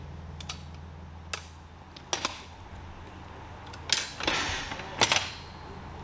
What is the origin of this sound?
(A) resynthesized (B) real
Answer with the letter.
B